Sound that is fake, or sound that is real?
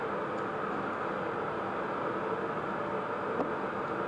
real